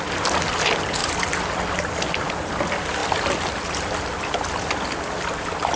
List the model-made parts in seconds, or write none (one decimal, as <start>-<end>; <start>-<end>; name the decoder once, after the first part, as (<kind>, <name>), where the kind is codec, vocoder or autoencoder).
none